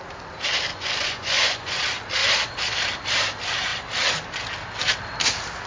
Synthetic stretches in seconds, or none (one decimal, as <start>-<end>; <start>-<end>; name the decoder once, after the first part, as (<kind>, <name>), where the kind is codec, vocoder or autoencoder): 0.7-1.8 (vocoder, Vocos)